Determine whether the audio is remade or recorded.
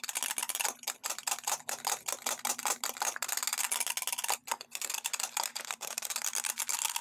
recorded